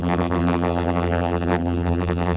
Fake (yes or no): yes